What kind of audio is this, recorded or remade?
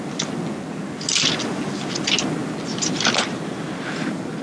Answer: recorded